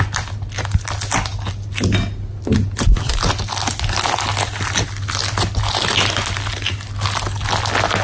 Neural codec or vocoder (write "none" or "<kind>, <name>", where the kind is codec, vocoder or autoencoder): none